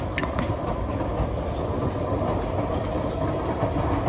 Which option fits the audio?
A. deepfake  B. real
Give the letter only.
B